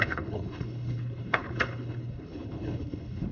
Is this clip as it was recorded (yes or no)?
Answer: no